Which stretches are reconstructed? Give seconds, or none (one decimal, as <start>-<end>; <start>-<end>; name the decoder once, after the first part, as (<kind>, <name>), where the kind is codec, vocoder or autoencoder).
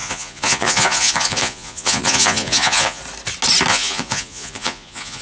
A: 0.0-3.0 (vocoder, Vocos); 3.7-5.2